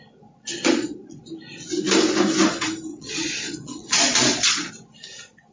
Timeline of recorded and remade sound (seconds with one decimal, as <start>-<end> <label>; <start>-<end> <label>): 0.0-0.5 recorded; 0.5-1.2 remade; 1.2-2.9 recorded; 2.9-4.7 remade; 4.7-5.5 recorded